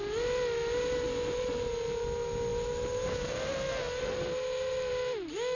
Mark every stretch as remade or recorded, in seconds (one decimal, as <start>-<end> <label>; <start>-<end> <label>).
0.0-5.5 recorded